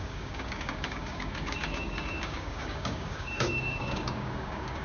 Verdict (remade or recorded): remade